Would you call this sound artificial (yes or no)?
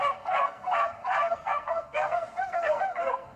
yes